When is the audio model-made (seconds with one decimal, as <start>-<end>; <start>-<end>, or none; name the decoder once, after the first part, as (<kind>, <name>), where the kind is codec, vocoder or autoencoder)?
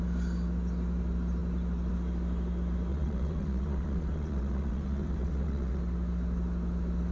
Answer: 2.9-5.8 (vocoder, WaveNeXt)